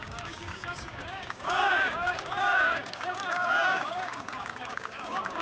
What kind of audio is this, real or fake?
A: fake